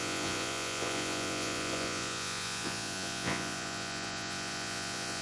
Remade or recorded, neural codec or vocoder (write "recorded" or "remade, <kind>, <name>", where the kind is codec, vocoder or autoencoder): remade, vocoder, Vocos